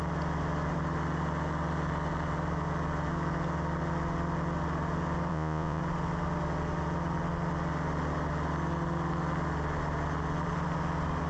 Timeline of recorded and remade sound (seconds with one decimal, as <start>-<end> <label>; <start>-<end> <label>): 0.0-5.3 recorded; 5.3-5.8 remade; 5.8-11.3 recorded